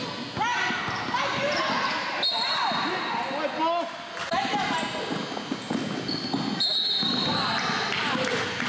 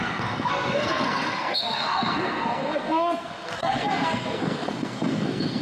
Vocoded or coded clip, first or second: second